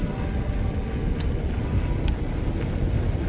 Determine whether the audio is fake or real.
real